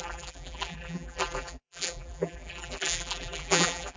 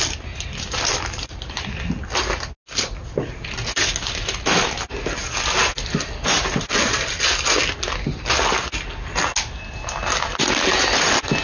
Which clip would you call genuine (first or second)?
second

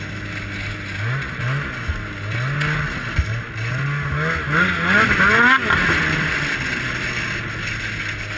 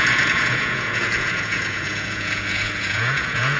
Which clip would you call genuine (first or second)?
first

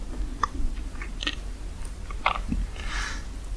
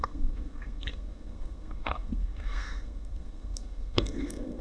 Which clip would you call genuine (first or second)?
first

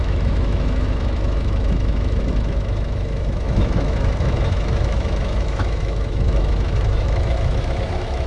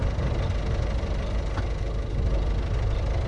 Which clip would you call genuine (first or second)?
second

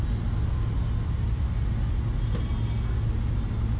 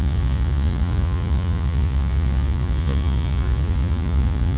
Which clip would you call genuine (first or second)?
first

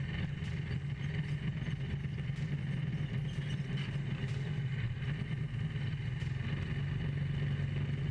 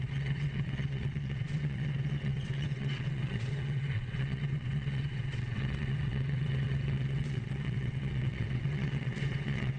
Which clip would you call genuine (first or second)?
first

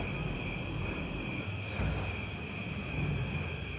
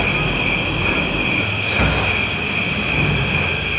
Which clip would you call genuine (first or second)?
second